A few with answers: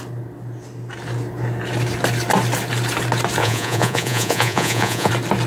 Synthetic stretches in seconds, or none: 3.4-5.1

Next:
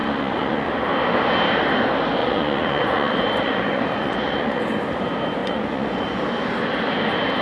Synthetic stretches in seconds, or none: 0.0-0.7; 2.2-4.6; 5.4-6.2

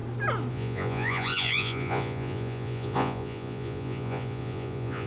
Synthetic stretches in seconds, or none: 0.5-5.1

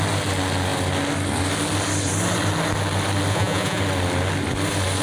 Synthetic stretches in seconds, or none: 3.3-3.8